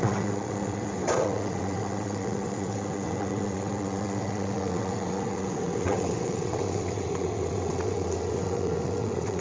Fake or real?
fake